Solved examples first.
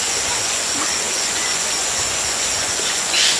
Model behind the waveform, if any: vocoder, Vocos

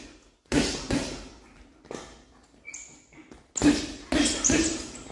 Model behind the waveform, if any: none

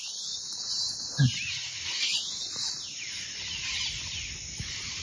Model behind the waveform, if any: none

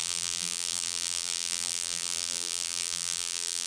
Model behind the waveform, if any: vocoder, BigVGAN v2